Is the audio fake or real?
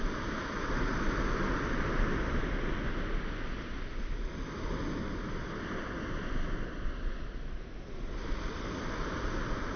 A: real